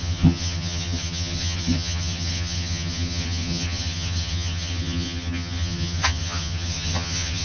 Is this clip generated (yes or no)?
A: yes